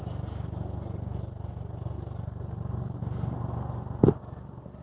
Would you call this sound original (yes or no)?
yes